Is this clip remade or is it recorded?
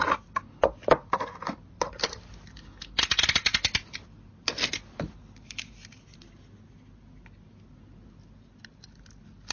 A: recorded